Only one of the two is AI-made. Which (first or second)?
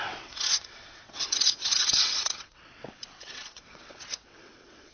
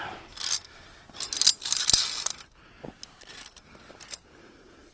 first